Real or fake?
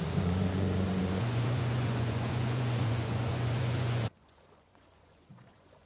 fake